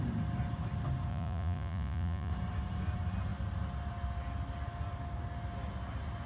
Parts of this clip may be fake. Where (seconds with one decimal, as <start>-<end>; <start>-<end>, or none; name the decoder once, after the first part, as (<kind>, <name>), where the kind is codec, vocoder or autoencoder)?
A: 1.1-2.3 (vocoder, Vocos)